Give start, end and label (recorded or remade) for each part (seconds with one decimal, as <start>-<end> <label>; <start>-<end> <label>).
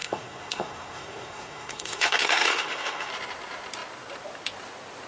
0.0-3.1 remade; 3.1-5.1 recorded